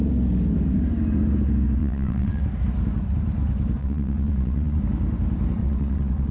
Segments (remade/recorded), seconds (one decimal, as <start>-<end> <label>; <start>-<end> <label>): 0.0-1.8 recorded; 1.8-2.4 remade; 2.4-3.8 recorded; 3.8-4.8 remade; 4.8-5.6 recorded; 5.6-6.3 remade